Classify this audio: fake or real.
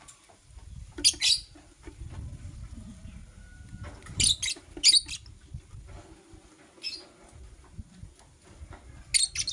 real